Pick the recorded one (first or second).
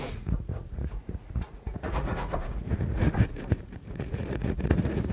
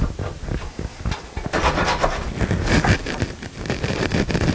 second